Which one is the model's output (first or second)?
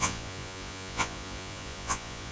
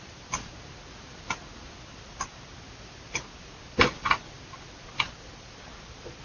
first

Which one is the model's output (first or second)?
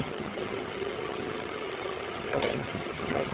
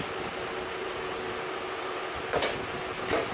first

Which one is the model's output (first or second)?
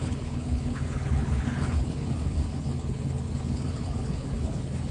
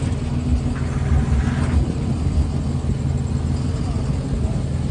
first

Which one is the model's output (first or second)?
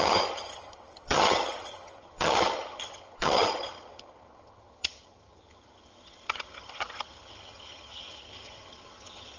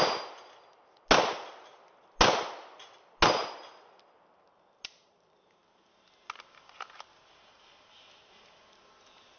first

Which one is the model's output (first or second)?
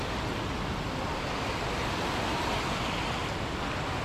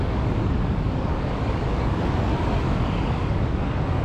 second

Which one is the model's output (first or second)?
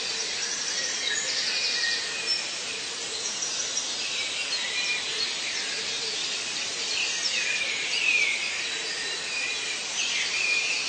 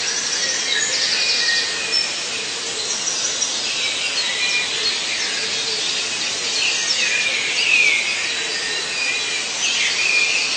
first